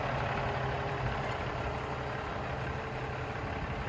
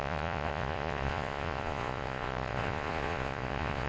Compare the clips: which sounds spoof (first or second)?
second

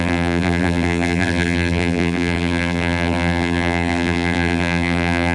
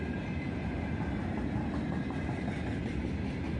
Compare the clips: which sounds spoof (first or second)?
first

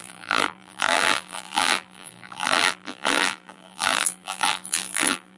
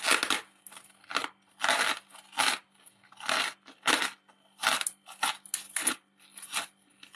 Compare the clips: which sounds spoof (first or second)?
first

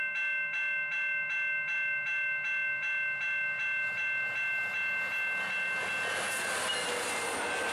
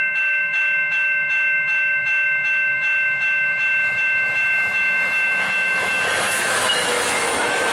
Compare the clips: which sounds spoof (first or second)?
second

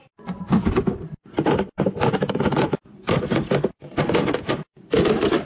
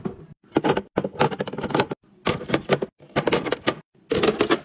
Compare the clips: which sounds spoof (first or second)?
first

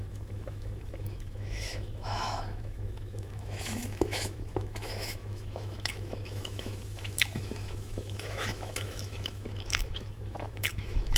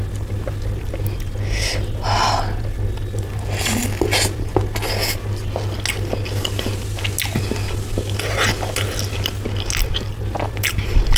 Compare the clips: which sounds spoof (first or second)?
first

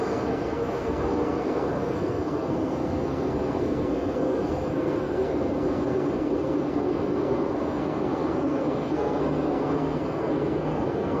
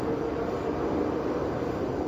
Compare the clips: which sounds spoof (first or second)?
first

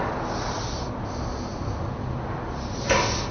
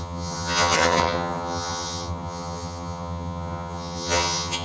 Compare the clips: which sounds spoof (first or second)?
second